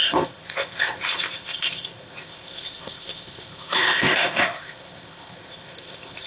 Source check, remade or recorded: remade